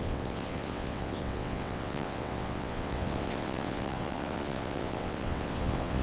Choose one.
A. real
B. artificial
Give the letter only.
B